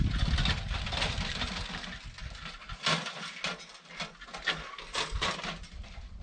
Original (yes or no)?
yes